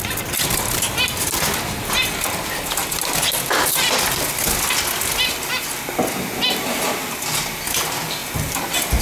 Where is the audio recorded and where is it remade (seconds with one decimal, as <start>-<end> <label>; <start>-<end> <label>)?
0.0-9.0 recorded